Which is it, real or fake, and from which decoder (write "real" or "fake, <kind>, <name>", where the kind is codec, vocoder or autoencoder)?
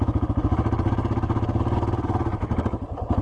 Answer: real